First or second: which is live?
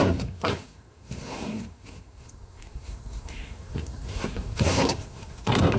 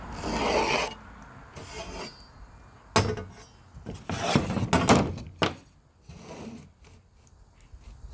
second